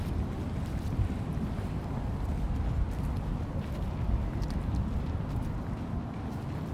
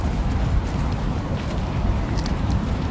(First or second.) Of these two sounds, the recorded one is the first